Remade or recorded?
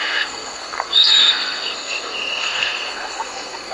remade